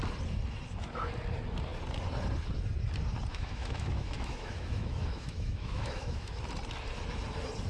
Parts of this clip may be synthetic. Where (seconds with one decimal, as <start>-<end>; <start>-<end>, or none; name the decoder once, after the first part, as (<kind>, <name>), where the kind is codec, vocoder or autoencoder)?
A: 3.3-6.3 (autoencoder, DAC-VAE)

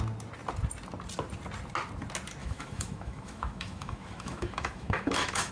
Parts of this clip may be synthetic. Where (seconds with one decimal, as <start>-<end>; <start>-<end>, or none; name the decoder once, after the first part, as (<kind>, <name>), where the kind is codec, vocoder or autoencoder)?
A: 2.4-5.5 (autoencoder, DAC-VAE)

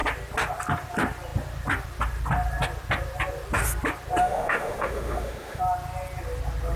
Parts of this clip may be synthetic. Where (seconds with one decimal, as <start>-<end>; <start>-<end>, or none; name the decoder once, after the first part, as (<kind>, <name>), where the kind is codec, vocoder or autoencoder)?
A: 4.2-5.6 (autoencoder, DAC-VAE)

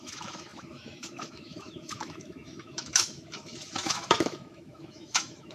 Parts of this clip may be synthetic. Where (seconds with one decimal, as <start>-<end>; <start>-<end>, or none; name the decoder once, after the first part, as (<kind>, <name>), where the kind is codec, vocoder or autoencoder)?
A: 0.0-5.5 (autoencoder, DAC-VAE)

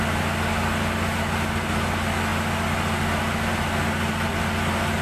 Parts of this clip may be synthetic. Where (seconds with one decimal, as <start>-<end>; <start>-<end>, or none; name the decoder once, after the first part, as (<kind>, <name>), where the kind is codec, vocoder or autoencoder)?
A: none

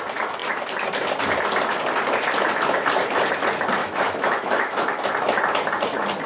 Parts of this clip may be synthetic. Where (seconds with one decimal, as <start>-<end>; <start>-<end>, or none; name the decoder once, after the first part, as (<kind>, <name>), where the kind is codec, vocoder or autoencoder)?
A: 3.8-5.1 (autoencoder, DAC-VAE)

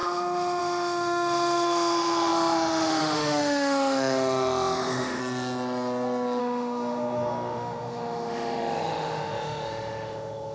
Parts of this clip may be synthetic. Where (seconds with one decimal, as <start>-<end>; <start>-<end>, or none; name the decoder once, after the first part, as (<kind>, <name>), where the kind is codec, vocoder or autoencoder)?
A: 0.0-5.2 (autoencoder, DAC-VAE); 6.4-10.5

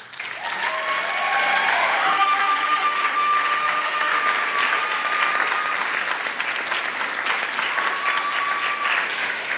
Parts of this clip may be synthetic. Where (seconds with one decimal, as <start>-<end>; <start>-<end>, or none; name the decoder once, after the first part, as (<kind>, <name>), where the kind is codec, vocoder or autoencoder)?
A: 1.7-4.2 (autoencoder, DAC-VAE); 9.1-9.6